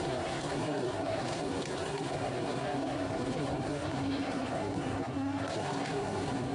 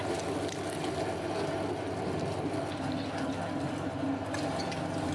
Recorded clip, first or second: second